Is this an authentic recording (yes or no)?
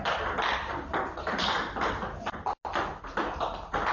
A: yes